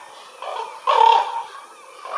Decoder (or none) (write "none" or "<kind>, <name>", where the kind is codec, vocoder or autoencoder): none